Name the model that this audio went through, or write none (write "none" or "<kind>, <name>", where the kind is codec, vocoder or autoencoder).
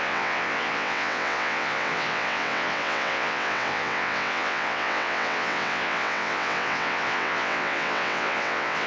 vocoder, WaveNeXt